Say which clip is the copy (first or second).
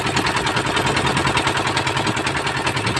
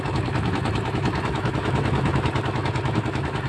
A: second